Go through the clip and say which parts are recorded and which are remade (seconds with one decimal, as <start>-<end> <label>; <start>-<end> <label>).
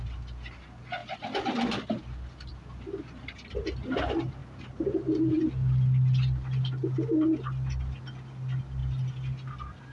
0.0-9.9 recorded